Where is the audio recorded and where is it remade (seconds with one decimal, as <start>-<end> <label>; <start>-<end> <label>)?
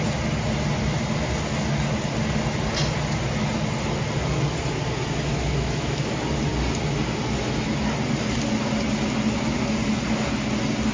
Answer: 0.0-5.3 recorded; 5.3-6.1 remade; 6.1-10.9 recorded